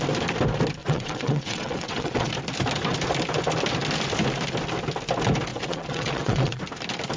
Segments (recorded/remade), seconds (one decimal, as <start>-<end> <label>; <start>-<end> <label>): 0.0-0.8 recorded; 0.8-2.3 remade; 2.3-5.5 recorded; 5.5-6.6 remade; 6.6-7.2 recorded